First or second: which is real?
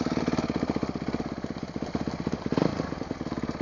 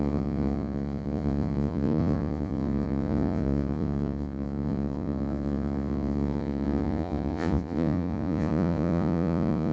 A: first